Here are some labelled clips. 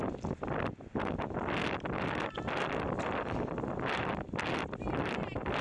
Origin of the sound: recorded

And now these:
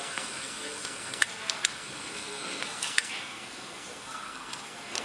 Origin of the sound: remade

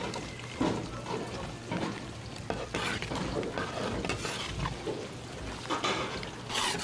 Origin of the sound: recorded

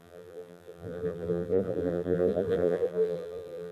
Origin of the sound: remade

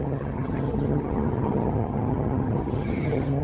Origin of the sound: remade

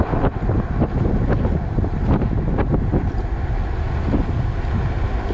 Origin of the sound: recorded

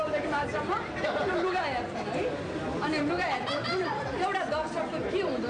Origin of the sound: recorded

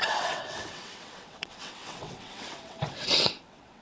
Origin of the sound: remade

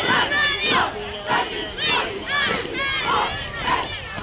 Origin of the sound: recorded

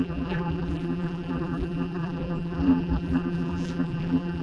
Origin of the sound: remade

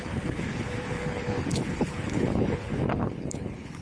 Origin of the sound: remade